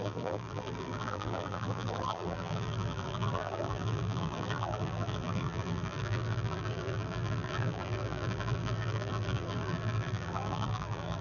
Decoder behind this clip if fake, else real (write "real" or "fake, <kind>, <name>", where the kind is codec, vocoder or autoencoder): fake, vocoder, BigVGAN v2